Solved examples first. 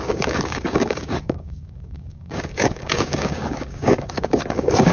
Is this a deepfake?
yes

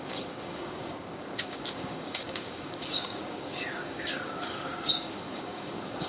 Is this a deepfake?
yes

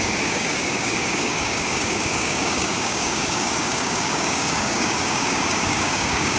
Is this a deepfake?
yes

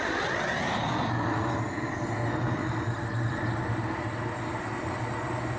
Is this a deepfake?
no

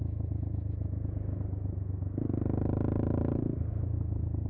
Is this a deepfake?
no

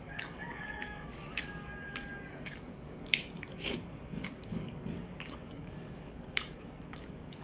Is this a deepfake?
yes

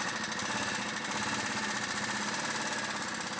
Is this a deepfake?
no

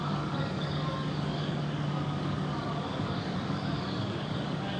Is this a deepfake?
yes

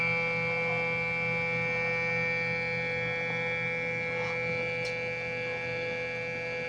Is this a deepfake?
no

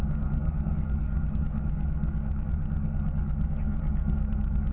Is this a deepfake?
yes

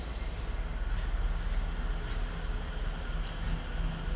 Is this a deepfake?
no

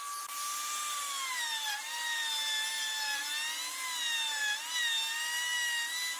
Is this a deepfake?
no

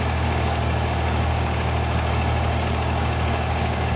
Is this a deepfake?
yes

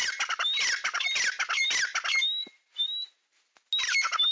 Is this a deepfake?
no